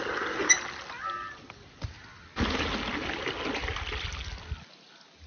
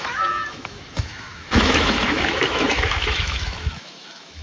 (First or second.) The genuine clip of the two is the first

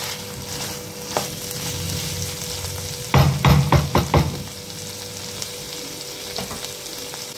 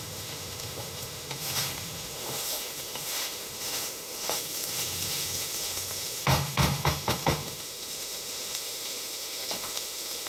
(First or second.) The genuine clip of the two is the first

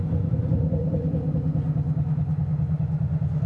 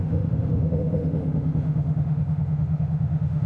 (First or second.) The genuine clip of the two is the first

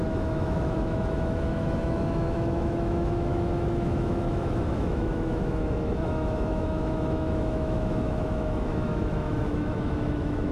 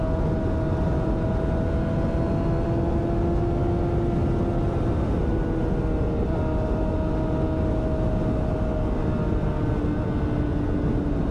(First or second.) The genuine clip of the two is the second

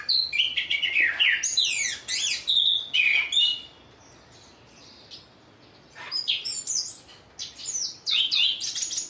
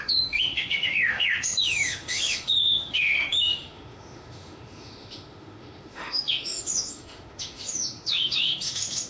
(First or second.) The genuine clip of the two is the first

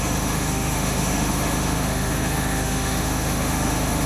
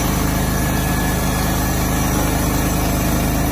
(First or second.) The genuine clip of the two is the second